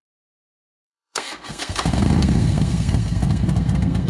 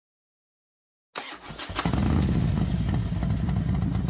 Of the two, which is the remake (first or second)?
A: first